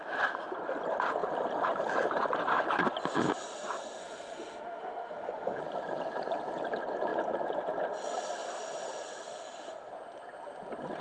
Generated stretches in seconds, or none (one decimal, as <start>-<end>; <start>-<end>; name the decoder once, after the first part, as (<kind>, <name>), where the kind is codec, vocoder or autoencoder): 4.0-5.6 (autoencoder, DAC-VAE)

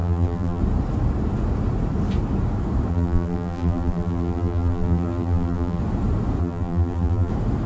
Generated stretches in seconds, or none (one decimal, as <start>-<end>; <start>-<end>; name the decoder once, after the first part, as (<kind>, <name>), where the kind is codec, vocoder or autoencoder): 0.0-0.6 (vocoder, BigVGAN v2); 2.9-5.8; 6.4-7.3

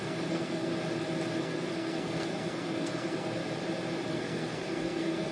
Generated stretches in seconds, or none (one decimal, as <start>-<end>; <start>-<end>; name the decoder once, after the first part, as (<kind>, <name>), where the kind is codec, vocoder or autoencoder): 0.0-0.7 (codec, SNAC); 1.4-3.4; 4.1-5.3

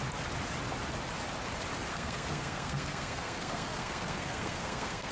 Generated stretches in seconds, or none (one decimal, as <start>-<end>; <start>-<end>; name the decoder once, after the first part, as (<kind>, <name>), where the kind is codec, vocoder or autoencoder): 1.9-5.1 (codec, SNAC)

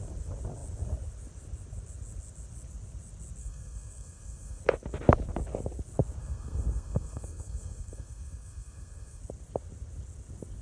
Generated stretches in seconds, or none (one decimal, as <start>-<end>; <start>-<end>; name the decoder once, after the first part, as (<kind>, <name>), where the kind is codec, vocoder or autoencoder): 3.4-4.6 (codec, SNAC); 6.2-9.2

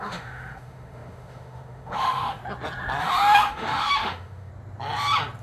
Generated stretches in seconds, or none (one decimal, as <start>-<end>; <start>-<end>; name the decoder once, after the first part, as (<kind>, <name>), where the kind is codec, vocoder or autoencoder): 0.0-2.4 (autoencoder, DAC-VAE); 3.0-4.5

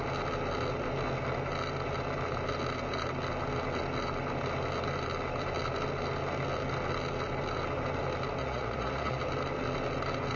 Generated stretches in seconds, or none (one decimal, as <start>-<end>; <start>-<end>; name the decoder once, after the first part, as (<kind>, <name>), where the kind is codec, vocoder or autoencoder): 8.4-9.2 (vocoder, Vocos)